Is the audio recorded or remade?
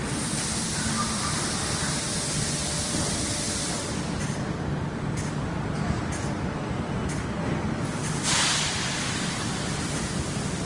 recorded